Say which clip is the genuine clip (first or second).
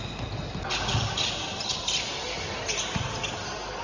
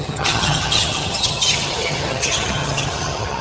first